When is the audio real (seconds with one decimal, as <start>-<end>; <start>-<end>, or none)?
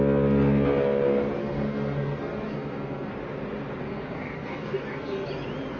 0.0-1.4; 3.1-3.8; 5.3-5.8